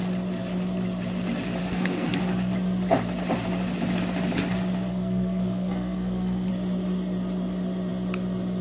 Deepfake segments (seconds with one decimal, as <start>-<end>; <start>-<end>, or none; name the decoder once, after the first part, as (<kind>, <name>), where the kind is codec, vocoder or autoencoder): 1.6-2.2 (codec, SNAC); 4.9-6.5